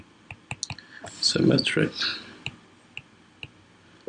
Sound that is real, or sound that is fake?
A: real